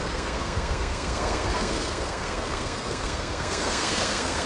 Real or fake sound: fake